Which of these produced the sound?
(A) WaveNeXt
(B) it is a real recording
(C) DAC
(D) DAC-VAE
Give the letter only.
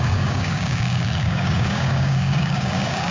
C